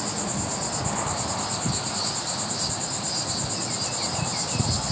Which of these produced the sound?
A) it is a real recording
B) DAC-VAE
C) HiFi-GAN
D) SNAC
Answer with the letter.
A